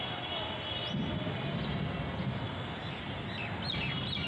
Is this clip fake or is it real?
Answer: real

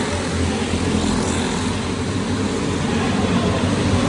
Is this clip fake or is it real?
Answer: real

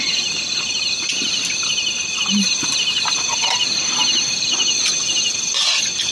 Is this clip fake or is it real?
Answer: real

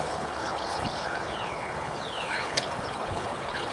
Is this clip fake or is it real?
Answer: fake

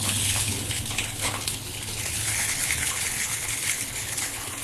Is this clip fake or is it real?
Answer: fake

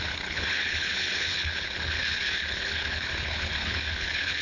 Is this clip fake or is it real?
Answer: fake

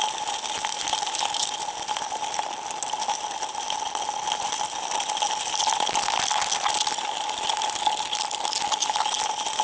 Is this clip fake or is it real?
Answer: real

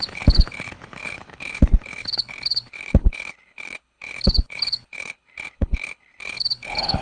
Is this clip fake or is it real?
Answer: fake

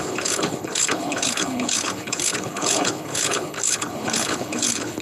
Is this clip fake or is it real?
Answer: fake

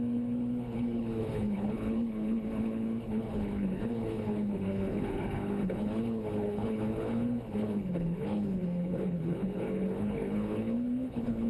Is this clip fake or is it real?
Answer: fake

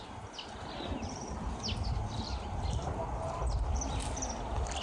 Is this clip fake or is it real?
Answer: real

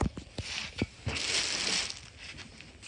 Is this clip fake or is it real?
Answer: real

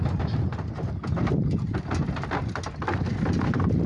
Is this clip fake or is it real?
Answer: real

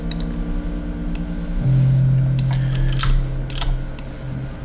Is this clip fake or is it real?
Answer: real